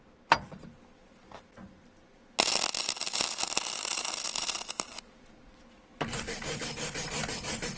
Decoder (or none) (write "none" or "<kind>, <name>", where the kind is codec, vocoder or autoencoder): none